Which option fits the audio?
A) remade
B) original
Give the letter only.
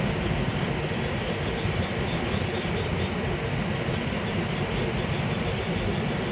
B